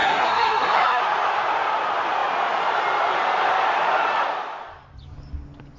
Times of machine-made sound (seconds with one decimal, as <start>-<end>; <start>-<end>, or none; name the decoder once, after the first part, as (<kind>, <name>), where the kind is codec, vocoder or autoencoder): 0.0-1.0 (codec, SNAC)